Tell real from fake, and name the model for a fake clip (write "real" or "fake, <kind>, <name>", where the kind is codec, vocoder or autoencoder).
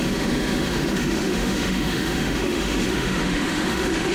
fake, autoencoder, DAC-VAE